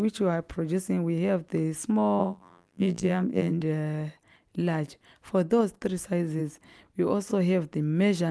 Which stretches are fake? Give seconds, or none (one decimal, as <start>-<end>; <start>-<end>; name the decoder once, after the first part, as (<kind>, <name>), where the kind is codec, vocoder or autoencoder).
2.2-3.6 (vocoder, BigVGAN v2)